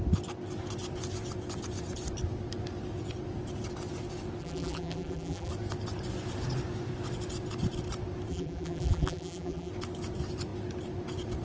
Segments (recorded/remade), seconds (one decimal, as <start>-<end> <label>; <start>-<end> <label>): 0.0-4.4 recorded; 4.4-5.5 remade; 5.5-8.3 recorded; 8.3-9.7 remade; 9.7-11.4 recorded